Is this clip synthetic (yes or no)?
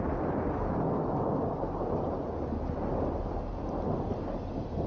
no